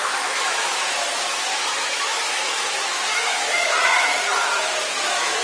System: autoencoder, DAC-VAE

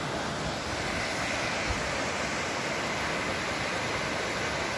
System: none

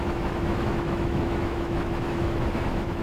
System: autoencoder, DAC-VAE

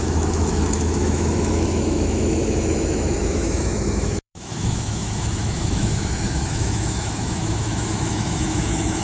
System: autoencoder, DAC-VAE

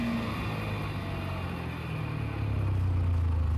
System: none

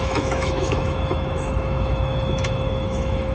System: autoencoder, DAC-VAE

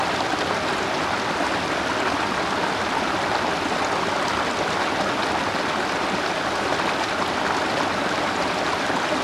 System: none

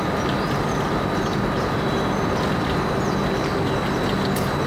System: none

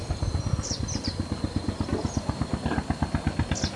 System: none